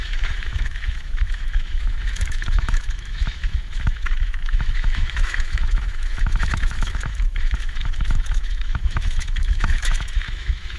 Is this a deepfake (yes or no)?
yes